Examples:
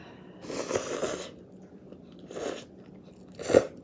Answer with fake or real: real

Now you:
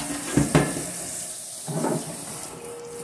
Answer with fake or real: real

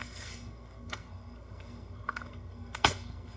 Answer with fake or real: fake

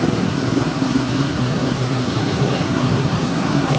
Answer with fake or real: fake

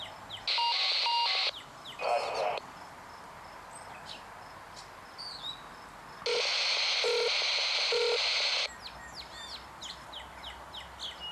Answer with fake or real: real